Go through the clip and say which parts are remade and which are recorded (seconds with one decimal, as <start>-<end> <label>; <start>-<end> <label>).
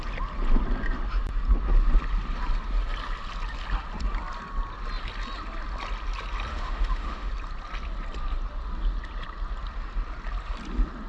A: 0.0-6.5 recorded; 6.5-7.3 remade; 7.3-11.1 recorded